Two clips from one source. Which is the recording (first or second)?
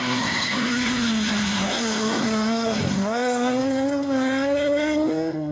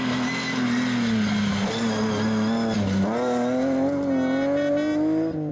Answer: second